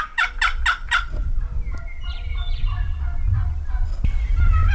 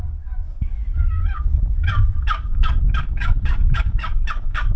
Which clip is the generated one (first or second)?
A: second